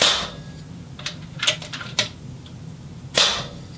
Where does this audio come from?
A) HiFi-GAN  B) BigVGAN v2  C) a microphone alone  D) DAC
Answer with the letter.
C